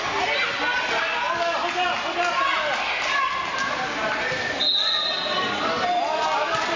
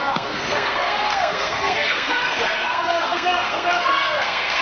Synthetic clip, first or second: second